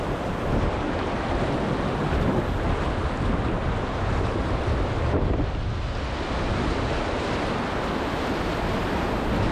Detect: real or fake real